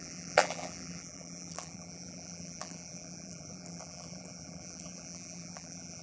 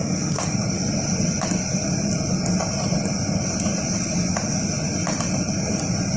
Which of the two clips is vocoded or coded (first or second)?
first